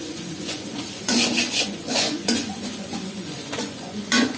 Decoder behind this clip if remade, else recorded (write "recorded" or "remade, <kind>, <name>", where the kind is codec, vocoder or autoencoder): remade, vocoder, Vocos